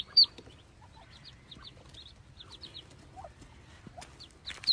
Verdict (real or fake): fake